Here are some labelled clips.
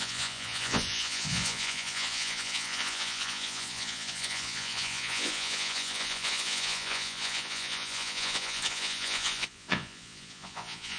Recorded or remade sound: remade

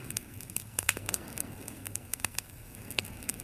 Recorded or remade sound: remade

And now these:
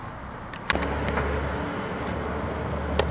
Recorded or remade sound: recorded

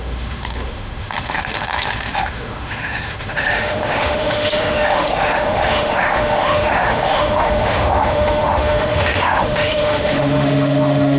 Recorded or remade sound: remade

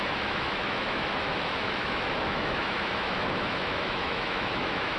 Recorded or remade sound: remade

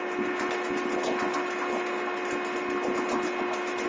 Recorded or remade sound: recorded